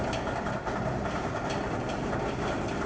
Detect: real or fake real